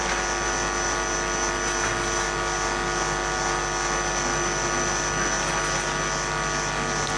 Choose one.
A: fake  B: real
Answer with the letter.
B